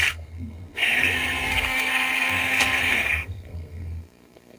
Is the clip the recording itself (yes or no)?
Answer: no